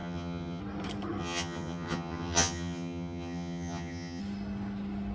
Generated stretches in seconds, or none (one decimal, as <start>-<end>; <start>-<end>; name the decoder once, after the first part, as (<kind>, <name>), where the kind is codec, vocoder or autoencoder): 0.0-0.6 (vocoder, HiFi-GAN); 1.2-4.2